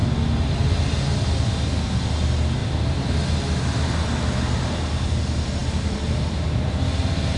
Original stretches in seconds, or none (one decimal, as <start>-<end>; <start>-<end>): 0.0-2.6; 3.3-5.6; 7.0-7.4